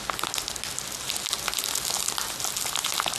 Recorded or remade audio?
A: recorded